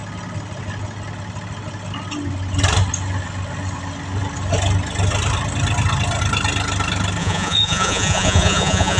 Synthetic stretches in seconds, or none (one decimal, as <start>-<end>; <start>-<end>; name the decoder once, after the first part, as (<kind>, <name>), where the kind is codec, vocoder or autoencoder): 7.2-9.0 (vocoder, Vocos)

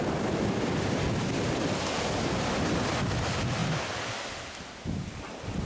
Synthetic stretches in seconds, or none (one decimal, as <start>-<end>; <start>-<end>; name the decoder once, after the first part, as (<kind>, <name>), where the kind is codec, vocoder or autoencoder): none

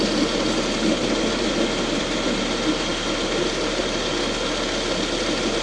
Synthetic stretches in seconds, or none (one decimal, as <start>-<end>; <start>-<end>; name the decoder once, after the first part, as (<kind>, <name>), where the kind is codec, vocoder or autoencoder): none

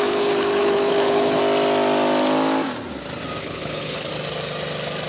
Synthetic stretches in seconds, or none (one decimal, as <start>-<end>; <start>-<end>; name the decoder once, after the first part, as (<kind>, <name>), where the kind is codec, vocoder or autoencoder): 0.0-1.4 (codec, HILCodec); 3.4-4.1

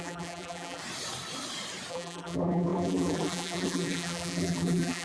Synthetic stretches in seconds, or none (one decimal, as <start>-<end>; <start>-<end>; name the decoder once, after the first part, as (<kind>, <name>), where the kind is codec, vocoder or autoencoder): 0.0-0.8 (vocoder, BigVGAN v2); 1.9-5.0